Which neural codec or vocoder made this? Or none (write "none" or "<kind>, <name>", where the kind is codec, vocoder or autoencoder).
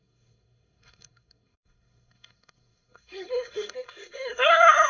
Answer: codec, SNAC